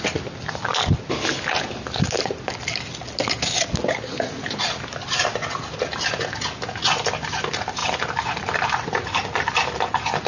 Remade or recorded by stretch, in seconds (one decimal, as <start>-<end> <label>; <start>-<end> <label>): 0.0-10.3 recorded